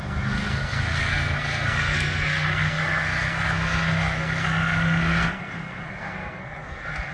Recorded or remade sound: remade